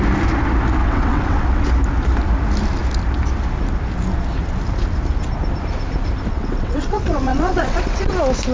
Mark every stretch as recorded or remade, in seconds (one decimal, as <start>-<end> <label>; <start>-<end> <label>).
0.0-0.8 recorded; 0.8-1.7 remade; 1.7-6.3 recorded; 6.3-8.1 remade; 8.1-8.5 recorded